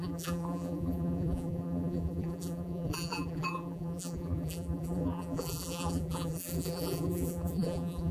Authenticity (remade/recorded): remade